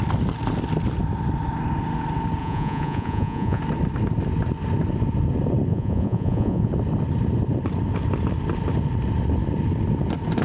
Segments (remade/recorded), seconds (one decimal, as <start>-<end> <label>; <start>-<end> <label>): 0.0-2.4 recorded; 2.4-3.6 remade; 3.6-5.7 recorded; 5.7-6.7 remade; 6.7-10.4 recorded